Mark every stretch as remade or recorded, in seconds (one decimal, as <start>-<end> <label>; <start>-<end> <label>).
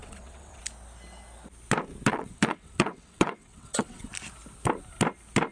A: 0.0-0.6 remade; 0.6-2.1 recorded; 2.1-4.1 remade; 4.1-5.5 recorded